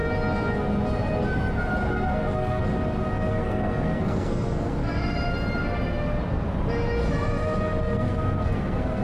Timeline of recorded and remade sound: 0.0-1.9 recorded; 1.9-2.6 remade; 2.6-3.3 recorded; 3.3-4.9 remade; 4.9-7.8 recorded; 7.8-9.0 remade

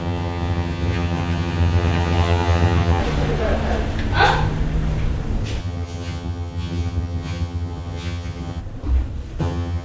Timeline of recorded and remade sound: 0.0-3.0 remade; 3.0-5.6 recorded; 5.6-8.6 remade; 8.6-9.4 recorded; 9.4-9.8 remade

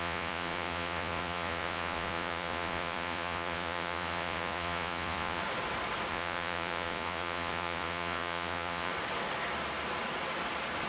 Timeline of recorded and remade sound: 0.0-5.4 remade; 5.4-6.1 recorded; 6.1-8.9 remade; 8.9-10.9 recorded